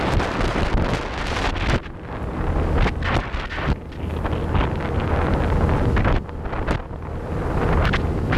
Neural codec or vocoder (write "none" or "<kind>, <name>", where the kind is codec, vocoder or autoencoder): none